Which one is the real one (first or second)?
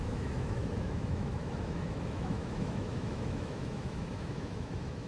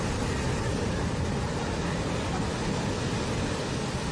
second